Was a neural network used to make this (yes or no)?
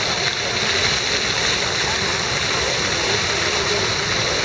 no